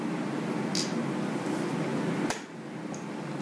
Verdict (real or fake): real